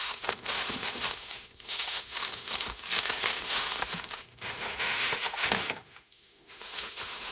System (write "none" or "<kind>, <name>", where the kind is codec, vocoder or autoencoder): autoencoder, DAC-VAE